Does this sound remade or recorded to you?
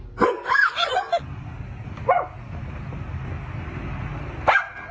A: recorded